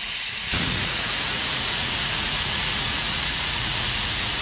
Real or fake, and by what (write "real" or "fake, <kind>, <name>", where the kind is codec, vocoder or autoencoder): fake, vocoder, Vocos